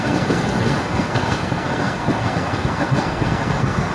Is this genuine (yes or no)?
no